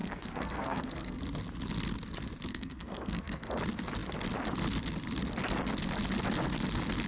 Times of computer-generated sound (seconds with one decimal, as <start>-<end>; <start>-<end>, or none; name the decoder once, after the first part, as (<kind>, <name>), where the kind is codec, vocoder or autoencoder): 0.0-1.2 (codec, SNAC); 2.5-3.5